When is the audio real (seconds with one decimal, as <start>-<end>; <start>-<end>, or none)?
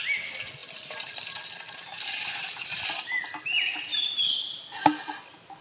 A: 0.0-0.6; 2.5-3.9; 4.6-5.6